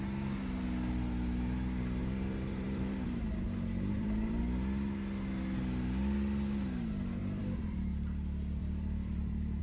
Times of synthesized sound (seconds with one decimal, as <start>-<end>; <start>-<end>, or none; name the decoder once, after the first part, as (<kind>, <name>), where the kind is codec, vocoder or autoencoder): 2.0-4.4 (vocoder, BigVGAN v2); 7.2-7.9; 8.6-9.6